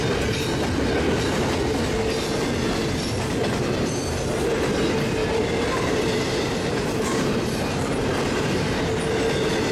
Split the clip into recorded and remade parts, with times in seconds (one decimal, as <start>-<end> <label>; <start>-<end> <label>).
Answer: 0.0-5.2 recorded; 5.2-8.1 remade; 8.1-9.7 recorded